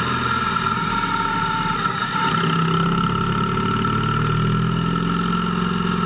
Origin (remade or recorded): recorded